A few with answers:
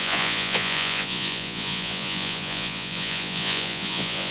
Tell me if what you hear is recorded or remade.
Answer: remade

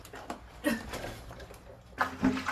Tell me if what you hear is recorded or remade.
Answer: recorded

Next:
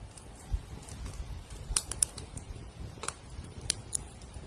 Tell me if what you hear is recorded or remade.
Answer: remade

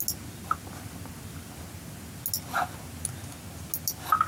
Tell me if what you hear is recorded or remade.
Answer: recorded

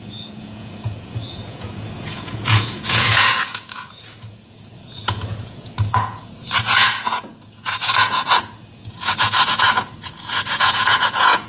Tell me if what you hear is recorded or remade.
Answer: remade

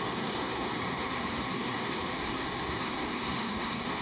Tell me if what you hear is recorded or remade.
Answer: remade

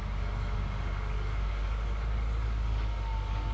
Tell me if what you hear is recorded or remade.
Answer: remade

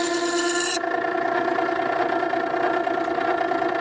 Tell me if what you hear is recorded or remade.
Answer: recorded